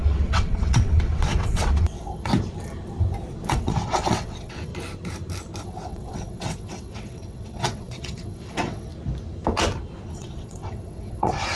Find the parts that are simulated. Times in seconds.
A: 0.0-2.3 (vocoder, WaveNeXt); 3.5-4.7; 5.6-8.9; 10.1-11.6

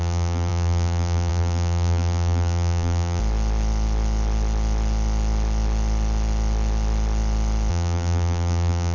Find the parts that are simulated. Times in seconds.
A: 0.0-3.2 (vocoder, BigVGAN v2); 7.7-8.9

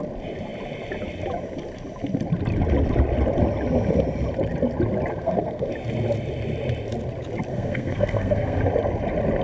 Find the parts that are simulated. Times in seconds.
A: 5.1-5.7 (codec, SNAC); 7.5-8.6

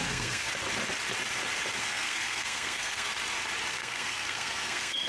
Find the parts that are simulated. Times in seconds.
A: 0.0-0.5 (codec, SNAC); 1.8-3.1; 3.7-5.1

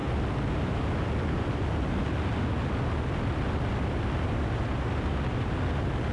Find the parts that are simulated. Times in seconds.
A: none